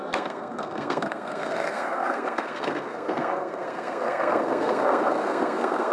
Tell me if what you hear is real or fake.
fake